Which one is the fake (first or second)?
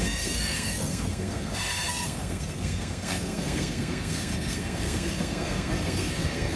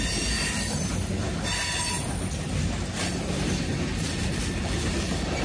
first